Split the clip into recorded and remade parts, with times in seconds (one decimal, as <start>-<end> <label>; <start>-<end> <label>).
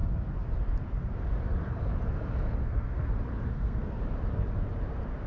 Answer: 0.0-2.6 recorded; 2.6-3.1 remade; 3.1-3.5 recorded; 3.5-4.0 remade; 4.0-5.3 recorded